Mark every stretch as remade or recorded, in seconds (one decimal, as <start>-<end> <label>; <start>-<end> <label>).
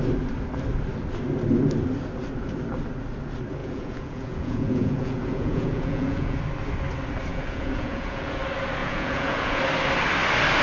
0.0-3.6 recorded; 3.6-6.4 remade; 6.4-7.3 recorded; 7.3-8.4 remade; 8.4-8.8 recorded; 8.8-9.6 remade; 9.6-10.6 recorded